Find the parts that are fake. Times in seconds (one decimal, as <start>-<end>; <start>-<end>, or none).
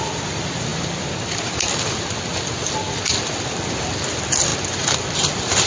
0.0-0.7; 4.1-4.5; 5.1-5.7